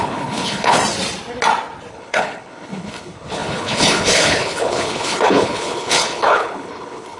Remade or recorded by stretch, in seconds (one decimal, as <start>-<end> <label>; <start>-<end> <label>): 0.0-0.8 remade; 0.8-1.9 recorded; 1.9-7.2 remade